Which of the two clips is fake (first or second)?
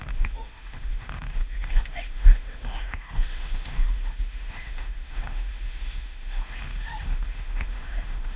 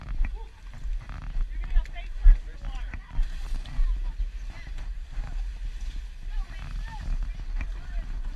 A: first